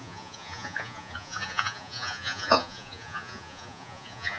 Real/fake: fake